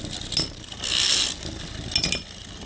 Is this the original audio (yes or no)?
yes